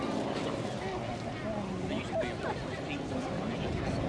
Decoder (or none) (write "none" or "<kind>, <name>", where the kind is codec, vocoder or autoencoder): none